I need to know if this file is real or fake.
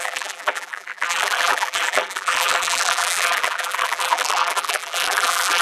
fake